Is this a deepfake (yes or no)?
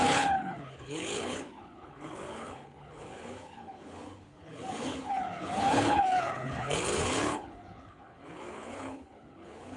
yes